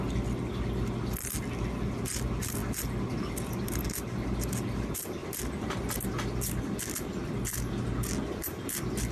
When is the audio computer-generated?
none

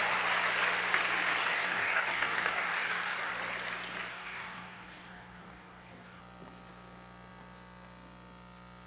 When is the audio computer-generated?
1.4-3.3 (codec, DAC); 4.1-6.2